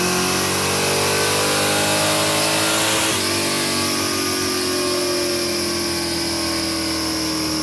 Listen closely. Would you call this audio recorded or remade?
recorded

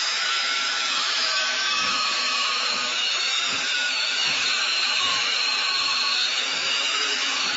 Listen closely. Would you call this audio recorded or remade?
remade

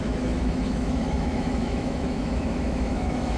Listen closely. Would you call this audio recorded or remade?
remade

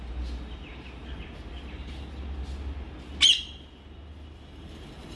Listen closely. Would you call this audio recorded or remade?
recorded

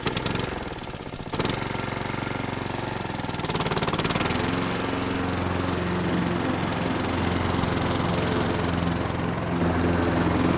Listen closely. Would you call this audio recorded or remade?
recorded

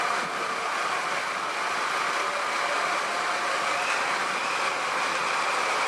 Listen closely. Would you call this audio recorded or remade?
recorded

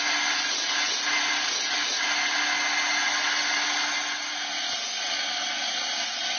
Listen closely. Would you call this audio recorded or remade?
recorded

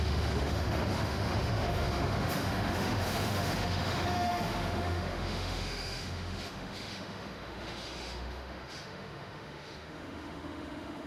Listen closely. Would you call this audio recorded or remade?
remade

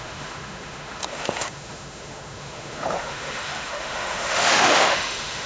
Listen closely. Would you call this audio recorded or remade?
remade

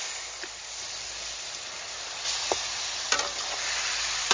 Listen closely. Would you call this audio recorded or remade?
recorded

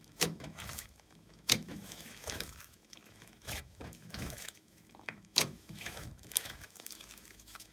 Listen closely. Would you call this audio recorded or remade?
remade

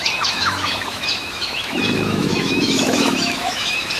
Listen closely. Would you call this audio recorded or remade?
remade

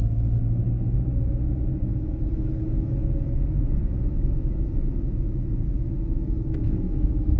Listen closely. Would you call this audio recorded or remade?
remade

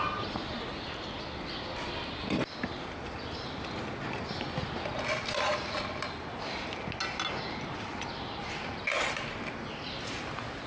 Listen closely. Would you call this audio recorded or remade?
recorded